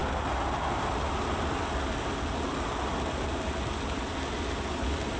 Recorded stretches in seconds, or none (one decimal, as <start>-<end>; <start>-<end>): 0.0-5.2